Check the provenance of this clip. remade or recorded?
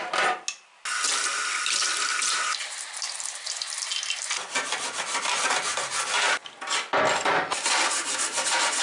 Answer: recorded